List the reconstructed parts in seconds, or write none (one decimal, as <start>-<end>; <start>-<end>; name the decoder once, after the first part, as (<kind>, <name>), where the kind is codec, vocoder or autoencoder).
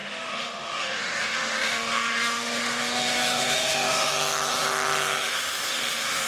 0.0-6.3 (autoencoder, DAC-VAE)